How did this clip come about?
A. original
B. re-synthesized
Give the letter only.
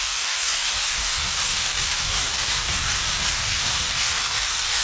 B